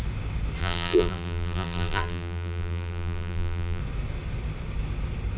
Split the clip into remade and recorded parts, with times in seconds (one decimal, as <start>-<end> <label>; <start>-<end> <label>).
0.0-0.6 recorded; 0.6-3.8 remade; 3.8-5.4 recorded